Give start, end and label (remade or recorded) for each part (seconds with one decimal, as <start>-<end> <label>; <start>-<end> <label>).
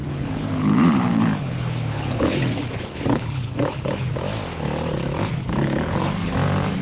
0.0-4.1 remade; 4.1-5.4 recorded; 5.4-6.1 remade; 6.1-6.8 recorded